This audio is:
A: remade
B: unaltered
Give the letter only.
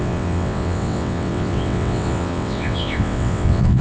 A